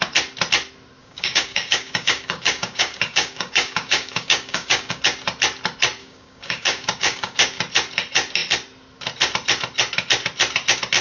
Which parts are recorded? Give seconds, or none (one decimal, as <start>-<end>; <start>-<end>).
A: 0.0-1.0; 5.0-6.0; 7.6-11.0